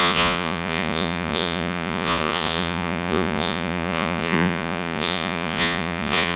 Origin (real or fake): fake